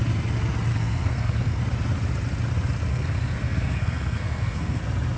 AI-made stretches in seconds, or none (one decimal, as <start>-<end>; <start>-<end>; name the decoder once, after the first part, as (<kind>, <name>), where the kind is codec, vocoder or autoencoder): 0.7-1.6 (codec, SNAC); 2.9-4.8